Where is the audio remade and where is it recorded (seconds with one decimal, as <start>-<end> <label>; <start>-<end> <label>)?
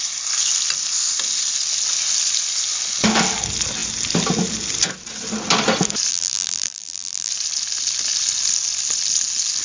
0.0-6.1 recorded; 6.1-7.3 remade; 7.3-9.6 recorded